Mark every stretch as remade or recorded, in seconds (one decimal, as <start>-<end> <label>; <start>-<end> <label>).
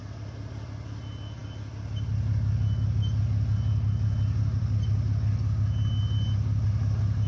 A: 0.0-7.3 recorded